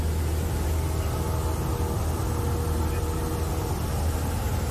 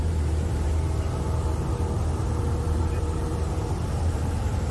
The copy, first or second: second